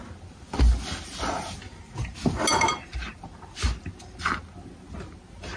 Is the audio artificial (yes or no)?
no